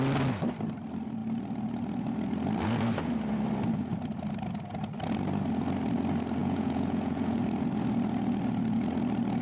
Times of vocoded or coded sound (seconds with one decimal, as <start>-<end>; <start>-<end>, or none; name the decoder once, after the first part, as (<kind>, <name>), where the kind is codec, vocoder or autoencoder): 6.4-7.4 (vocoder, Vocos)